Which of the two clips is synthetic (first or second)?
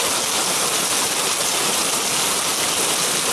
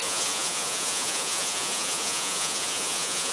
second